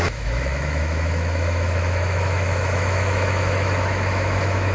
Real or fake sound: fake